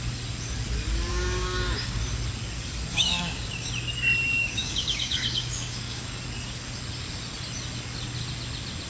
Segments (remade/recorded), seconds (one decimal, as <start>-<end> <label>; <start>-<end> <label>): 0.0-1.1 recorded; 1.1-2.0 remade; 2.0-2.9 recorded; 2.9-3.7 remade; 3.7-4.4 recorded; 4.4-6.2 remade; 6.2-8.9 recorded